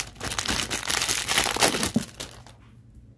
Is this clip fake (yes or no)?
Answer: no